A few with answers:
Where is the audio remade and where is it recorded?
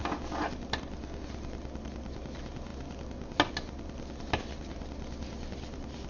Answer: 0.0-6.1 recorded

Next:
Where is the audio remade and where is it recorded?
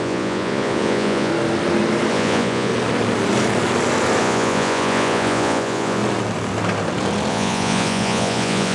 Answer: 0.0-1.3 remade; 1.3-2.1 recorded; 2.1-2.7 remade; 2.7-4.2 recorded; 4.2-6.0 remade; 6.0-7.3 recorded; 7.3-8.7 remade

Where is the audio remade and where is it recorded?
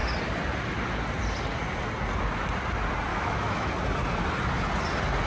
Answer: 0.0-3.1 recorded; 3.1-3.7 remade; 3.7-5.3 recorded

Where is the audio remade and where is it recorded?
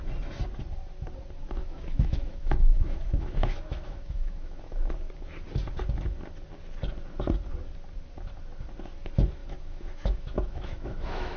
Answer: 0.0-1.6 recorded; 1.6-4.9 remade; 4.9-9.4 recorded; 9.4-11.4 remade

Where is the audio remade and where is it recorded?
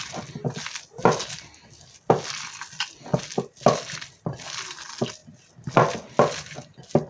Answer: 0.0-7.1 recorded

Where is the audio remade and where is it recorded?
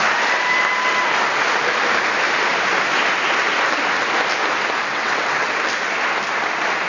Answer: 0.0-4.9 recorded; 4.9-5.5 remade; 5.5-6.9 recorded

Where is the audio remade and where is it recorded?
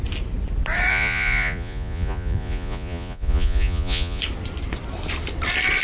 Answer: 0.0-0.9 recorded; 0.9-4.2 remade; 4.2-5.8 recorded